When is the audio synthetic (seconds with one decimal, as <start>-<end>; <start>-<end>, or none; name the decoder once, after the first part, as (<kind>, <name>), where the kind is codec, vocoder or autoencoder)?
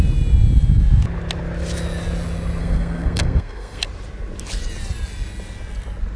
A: 2.6-3.8 (codec, SNAC)